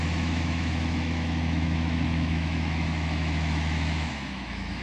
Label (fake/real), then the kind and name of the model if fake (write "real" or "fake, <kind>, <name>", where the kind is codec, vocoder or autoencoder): fake, autoencoder, DAC-VAE